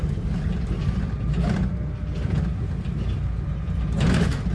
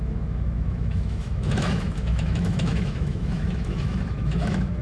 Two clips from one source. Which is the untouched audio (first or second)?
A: first